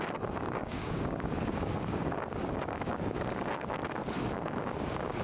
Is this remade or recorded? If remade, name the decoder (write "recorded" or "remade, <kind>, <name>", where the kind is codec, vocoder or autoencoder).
remade, codec, DAC